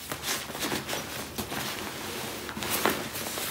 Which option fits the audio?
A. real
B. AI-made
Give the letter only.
A